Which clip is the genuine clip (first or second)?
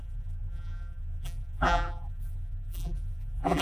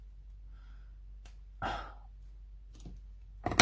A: second